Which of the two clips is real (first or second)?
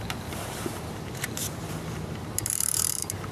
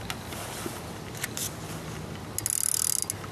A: second